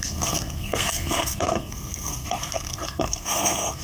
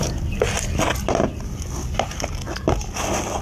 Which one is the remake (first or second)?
first